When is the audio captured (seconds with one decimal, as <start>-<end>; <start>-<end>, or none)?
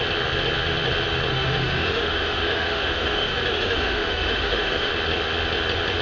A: 0.0-1.3; 4.9-6.0